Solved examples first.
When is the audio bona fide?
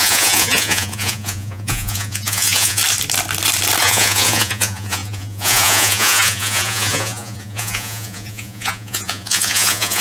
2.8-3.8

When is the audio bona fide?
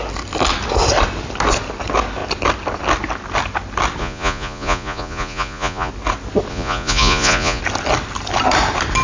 0.0-4.0; 5.9-6.5; 7.6-9.0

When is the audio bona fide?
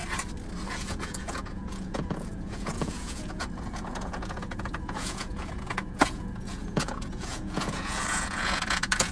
0.0-0.7